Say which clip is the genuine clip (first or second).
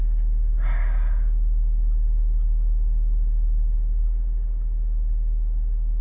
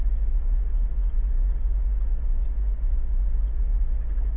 first